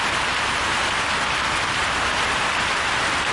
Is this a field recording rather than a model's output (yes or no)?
yes